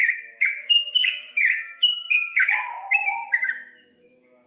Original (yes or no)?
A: no